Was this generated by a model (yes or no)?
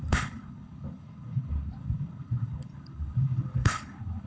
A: yes